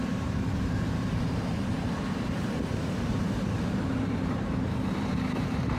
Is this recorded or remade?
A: remade